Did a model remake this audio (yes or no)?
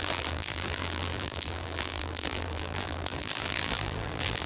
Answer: yes